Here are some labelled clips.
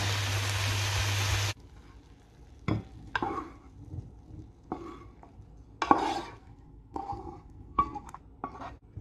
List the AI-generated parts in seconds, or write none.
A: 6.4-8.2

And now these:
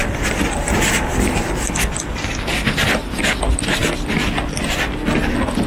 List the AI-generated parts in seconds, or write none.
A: none